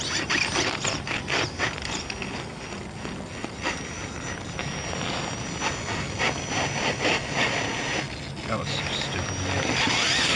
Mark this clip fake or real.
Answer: real